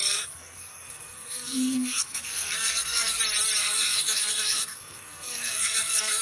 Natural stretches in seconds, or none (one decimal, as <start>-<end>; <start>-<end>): 3.2-3.6